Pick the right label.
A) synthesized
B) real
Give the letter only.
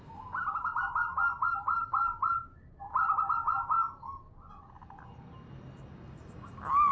B